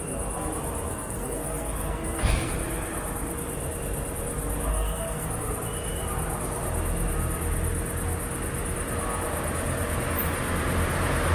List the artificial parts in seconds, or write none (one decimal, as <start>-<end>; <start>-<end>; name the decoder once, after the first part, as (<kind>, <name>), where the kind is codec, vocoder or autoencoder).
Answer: 0.9-2.5 (codec, SNAC); 4.7-5.5

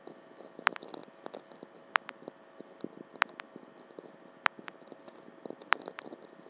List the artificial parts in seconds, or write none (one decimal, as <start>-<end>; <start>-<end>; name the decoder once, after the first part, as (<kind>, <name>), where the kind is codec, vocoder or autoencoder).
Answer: none

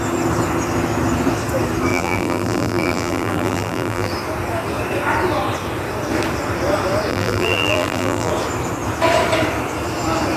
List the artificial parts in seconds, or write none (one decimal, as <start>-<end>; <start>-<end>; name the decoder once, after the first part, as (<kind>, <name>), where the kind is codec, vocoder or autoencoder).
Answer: 1.9-4.1 (vocoder, BigVGAN v2); 7.1-8.3

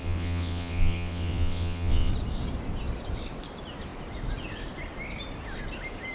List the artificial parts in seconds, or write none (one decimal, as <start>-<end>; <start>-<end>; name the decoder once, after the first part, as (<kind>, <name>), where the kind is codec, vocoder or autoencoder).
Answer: 0.0-2.1 (vocoder, WaveNeXt)

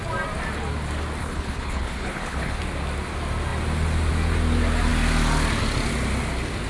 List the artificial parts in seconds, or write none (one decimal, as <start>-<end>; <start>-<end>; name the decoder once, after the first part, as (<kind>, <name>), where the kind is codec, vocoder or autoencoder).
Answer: 1.2-2.6 (codec, HILCodec)

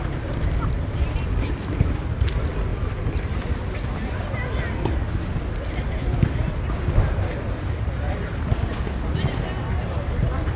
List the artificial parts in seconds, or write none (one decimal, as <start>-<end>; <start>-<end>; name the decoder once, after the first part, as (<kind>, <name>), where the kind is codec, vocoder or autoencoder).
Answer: none

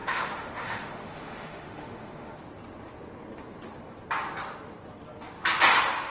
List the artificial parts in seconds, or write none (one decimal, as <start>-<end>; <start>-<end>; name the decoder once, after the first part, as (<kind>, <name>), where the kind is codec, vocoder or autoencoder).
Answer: 0.0-2.4 (autoencoder, DAC-VAE)

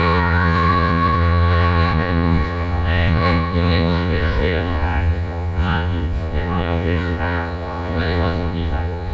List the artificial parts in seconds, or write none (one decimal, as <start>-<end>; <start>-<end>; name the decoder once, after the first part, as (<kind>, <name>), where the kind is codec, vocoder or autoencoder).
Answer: 0.0-9.1 (vocoder, Vocos)